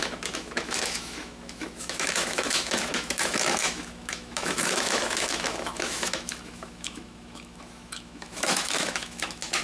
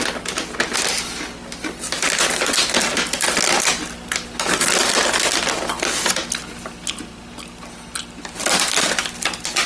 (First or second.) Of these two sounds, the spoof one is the first